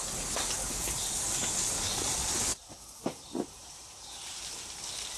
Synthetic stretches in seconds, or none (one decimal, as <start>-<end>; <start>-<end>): none